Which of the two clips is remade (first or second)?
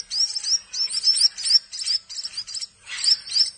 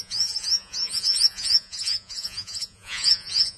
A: second